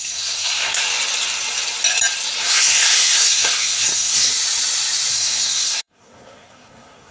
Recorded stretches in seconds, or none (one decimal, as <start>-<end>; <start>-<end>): 0.8-2.4; 4.3-5.1